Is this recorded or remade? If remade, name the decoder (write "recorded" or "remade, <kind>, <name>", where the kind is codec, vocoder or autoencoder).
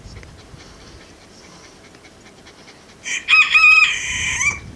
recorded